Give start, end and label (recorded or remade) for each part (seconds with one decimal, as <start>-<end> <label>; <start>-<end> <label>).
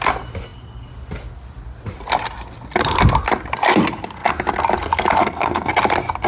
0.0-5.2 recorded; 5.2-5.7 remade; 5.7-6.3 recorded